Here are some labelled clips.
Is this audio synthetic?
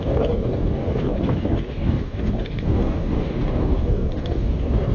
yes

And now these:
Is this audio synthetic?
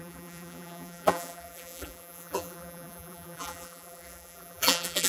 yes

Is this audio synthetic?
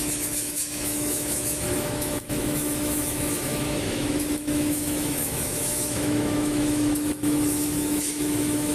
yes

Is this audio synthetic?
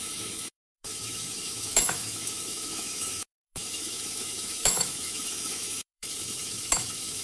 yes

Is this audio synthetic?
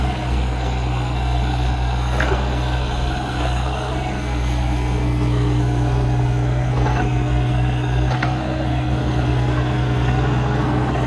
yes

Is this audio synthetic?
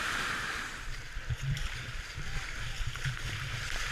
yes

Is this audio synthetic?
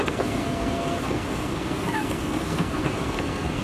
yes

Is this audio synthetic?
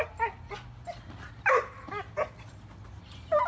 no